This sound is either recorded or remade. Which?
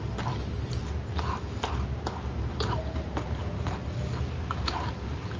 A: recorded